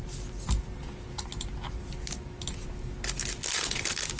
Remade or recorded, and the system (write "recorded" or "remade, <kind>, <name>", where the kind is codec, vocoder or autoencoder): recorded